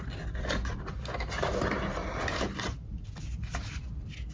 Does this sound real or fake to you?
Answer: real